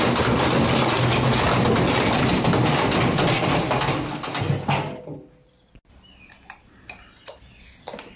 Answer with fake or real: real